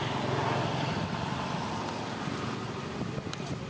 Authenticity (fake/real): real